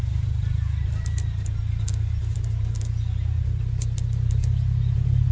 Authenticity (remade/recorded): recorded